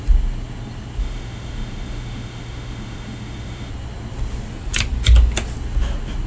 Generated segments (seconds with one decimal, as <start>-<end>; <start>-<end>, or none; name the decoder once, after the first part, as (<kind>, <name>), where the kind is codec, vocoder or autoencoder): 1.0-3.7 (autoencoder, DAC-VAE)